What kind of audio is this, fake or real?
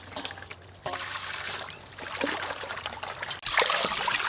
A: real